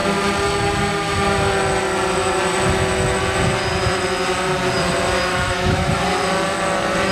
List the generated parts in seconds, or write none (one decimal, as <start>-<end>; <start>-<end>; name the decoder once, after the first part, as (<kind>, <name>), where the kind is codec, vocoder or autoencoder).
5.3-6.0 (autoencoder, DAC-VAE)